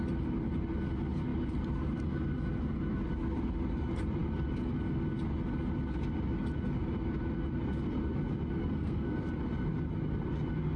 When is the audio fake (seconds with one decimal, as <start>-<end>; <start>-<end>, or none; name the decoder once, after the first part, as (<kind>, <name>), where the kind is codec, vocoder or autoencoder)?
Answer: 8.6-9.3 (codec, SNAC)